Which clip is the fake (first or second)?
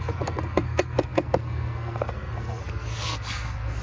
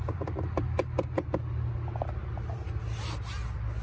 first